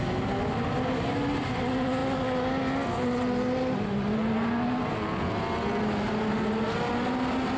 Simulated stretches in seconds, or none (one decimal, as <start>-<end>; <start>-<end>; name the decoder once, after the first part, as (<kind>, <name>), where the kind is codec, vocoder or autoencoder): none